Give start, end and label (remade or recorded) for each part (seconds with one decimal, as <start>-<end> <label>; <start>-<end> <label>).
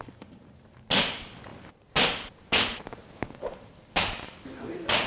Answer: 0.0-5.1 recorded